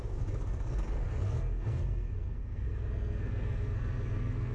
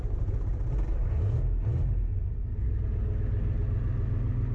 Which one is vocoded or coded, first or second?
first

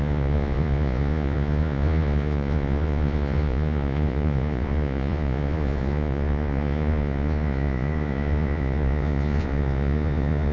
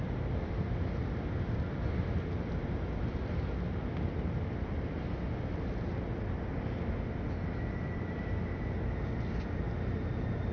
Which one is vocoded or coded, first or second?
first